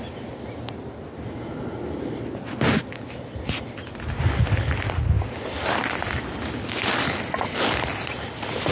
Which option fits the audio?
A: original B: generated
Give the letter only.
A